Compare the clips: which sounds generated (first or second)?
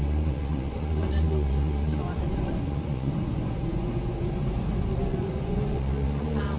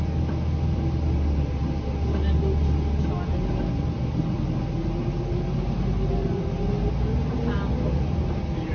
first